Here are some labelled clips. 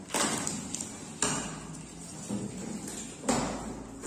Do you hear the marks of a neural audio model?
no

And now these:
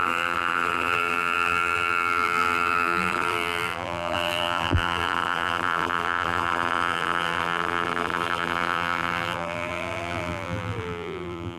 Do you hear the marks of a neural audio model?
yes